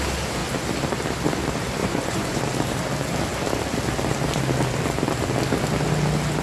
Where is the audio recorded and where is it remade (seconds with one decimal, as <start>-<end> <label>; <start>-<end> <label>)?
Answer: 0.0-1.8 recorded; 1.8-2.4 remade; 2.4-6.4 recorded